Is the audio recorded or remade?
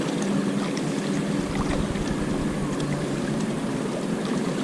recorded